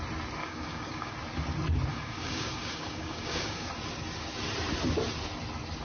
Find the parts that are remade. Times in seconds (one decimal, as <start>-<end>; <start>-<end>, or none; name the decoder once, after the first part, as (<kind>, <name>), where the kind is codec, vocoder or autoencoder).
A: 0.4-1.1 (codec, DAC); 1.9-3.7